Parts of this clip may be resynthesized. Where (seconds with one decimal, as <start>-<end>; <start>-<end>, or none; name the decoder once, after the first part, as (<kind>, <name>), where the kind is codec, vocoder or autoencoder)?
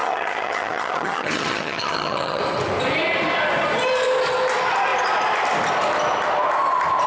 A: 0.0-2.4 (vocoder, HiFi-GAN)